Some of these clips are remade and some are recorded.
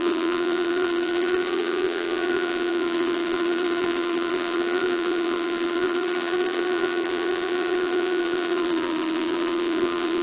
remade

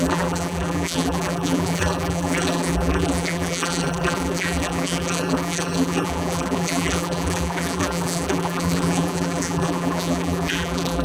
remade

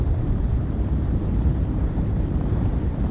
remade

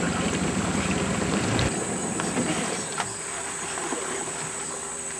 remade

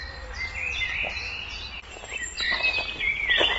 recorded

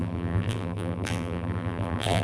remade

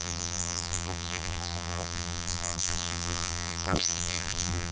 remade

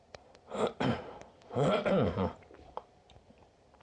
remade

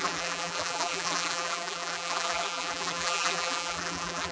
remade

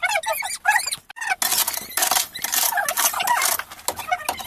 recorded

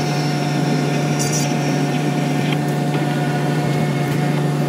remade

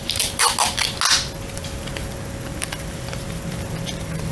recorded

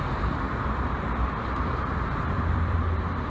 remade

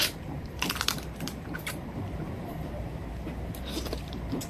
remade